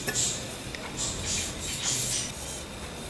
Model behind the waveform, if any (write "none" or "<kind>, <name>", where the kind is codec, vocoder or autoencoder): none